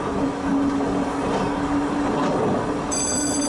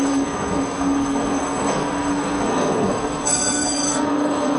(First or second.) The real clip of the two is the first